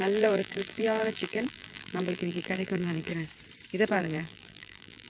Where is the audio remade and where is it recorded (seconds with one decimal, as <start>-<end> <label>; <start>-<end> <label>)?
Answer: 0.0-3.1 remade; 3.1-3.9 recorded; 3.9-5.1 remade